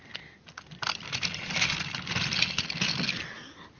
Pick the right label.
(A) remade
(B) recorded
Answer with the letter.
B